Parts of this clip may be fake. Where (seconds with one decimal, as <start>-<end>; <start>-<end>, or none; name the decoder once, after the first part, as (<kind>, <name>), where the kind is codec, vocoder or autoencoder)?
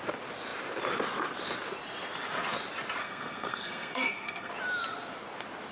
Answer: 3.0-4.5 (codec, SNAC)